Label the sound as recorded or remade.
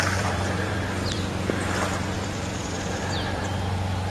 remade